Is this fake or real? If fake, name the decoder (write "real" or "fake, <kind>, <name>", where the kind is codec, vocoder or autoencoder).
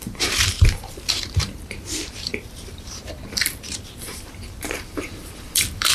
fake, vocoder, BigVGAN v2